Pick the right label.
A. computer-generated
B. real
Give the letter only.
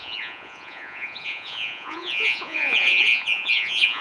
A